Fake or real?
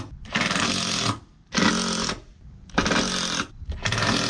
real